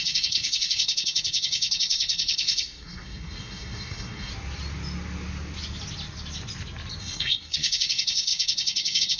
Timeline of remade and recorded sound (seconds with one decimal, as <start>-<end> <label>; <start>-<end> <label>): 0.0-4.3 remade; 4.3-7.0 recorded; 7.0-9.2 remade